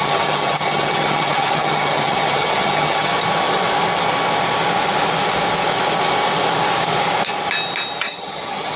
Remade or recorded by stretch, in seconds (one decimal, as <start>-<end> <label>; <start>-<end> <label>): 0.0-3.1 remade; 3.1-8.0 recorded; 8.0-8.8 remade